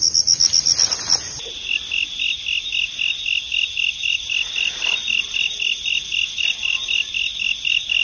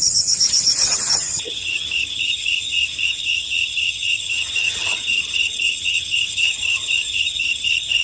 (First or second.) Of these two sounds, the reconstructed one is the second